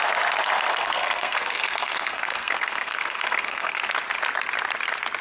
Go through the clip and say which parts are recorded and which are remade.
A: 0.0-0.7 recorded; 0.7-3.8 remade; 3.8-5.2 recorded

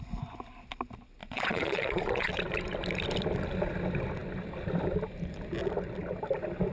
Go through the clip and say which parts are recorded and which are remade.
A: 0.0-1.2 recorded; 1.2-2.3 remade; 2.3-6.7 recorded

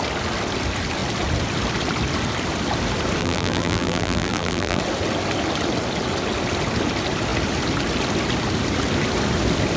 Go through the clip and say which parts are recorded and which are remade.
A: 0.0-3.2 recorded; 3.2-4.8 remade; 4.8-9.8 recorded

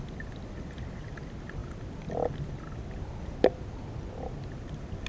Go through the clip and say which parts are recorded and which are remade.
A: 0.0-5.1 recorded

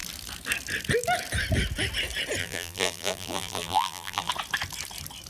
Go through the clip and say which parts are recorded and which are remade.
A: 0.0-2.4 recorded; 2.4-4.3 remade; 4.3-5.3 recorded

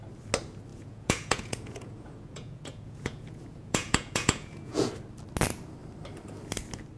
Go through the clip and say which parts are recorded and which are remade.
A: 0.0-0.7 recorded; 0.7-4.9 remade; 4.9-7.0 recorded